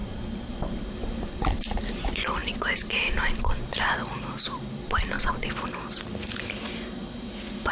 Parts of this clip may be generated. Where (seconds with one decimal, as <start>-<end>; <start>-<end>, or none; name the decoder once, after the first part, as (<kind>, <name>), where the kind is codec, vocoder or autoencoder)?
0.0-7.7 (vocoder, BigVGAN v2)